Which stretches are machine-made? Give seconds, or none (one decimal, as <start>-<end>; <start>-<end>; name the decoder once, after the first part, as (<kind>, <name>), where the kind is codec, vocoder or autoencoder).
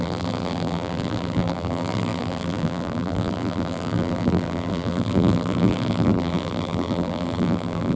0.0-8.0 (vocoder, BigVGAN v2)